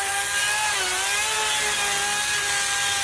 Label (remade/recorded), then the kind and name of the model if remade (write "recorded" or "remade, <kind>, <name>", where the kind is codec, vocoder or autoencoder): recorded